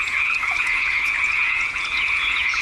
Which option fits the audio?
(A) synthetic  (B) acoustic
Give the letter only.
A